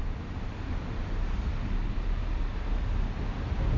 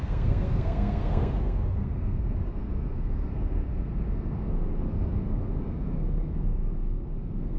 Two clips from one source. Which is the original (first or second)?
first